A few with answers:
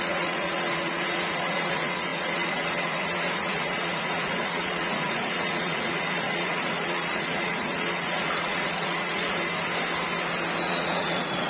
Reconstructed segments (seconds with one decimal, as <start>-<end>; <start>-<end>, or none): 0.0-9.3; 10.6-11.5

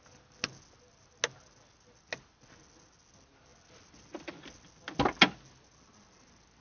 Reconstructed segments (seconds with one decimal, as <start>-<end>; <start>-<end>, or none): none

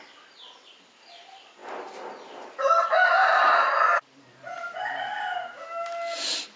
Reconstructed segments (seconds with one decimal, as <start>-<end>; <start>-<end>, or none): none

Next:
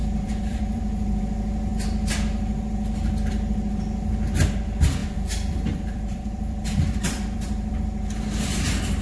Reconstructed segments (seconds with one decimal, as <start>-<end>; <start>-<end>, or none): 0.0-1.2; 5.0-7.7

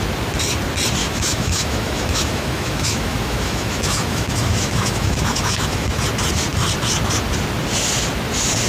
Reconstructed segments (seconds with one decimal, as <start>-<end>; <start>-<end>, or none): 1.0-6.0